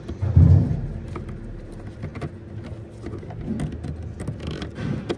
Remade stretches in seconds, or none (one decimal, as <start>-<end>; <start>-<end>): none

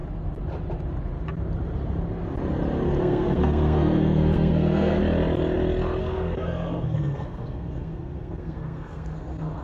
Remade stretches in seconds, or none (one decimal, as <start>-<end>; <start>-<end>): 3.0-5.0; 6.0-9.6

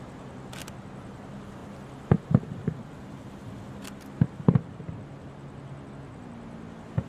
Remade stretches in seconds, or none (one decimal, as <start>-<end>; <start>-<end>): none

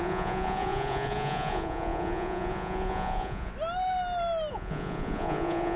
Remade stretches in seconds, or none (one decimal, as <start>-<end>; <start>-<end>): 0.0-3.5; 4.5-5.8

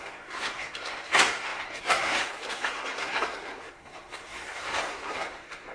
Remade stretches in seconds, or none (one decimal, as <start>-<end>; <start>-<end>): 0.0-5.7